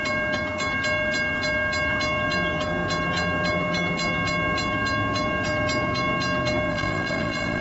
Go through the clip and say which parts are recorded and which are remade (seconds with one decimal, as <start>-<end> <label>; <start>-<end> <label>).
0.0-6.7 recorded; 6.7-7.6 remade